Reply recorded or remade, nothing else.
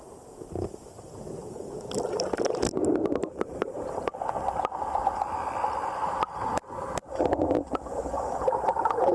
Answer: recorded